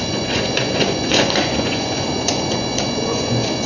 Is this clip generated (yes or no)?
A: yes